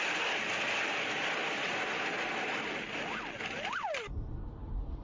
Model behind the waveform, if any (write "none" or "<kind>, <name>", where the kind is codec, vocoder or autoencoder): none